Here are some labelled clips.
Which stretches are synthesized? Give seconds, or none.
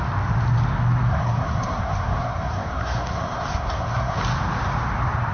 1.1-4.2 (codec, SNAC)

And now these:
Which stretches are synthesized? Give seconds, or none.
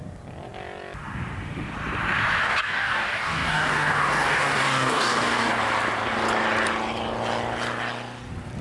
2.4-5.6 (codec, DAC)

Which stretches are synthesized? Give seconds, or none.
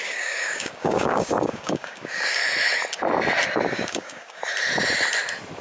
0.0-2.4 (codec, DAC); 3.7-4.4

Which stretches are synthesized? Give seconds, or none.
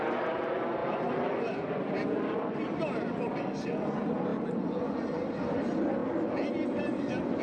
none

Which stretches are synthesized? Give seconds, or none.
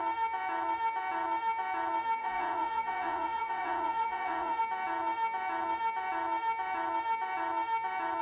2.2-4.6 (vocoder, Vocos)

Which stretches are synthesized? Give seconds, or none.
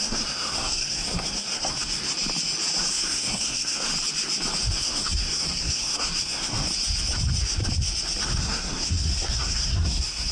0.0-2.0 (codec, SNAC); 2.9-3.9; 4.8-6.7; 8.4-10.3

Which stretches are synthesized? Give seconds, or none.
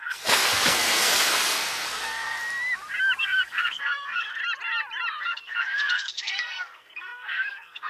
0.0-2.4 (codec, SNAC); 3.2-4.4; 5.2-7.9